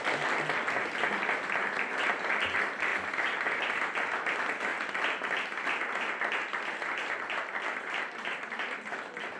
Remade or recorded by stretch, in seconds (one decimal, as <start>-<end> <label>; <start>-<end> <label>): 0.0-2.9 recorded; 2.9-4.3 remade; 4.3-4.7 recorded; 4.7-8.0 remade; 8.0-9.4 recorded